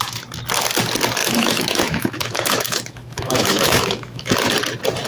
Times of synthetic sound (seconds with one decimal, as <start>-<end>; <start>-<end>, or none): 1.2-4.3